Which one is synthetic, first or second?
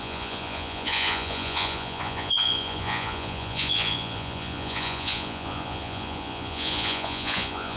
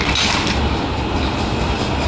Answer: first